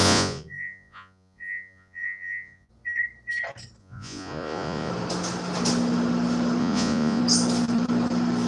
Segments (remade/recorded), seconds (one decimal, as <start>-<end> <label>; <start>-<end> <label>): 0.0-2.7 remade; 2.7-3.8 recorded; 3.8-4.9 remade; 4.9-6.6 recorded; 6.6-7.2 remade; 7.2-8.5 recorded